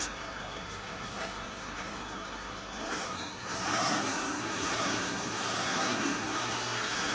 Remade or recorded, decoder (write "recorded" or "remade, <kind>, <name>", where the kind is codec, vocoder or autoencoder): remade, codec, SNAC